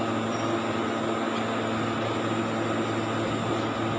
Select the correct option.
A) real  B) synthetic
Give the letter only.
A